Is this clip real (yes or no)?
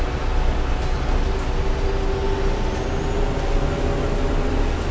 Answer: yes